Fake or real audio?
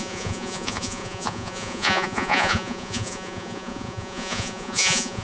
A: fake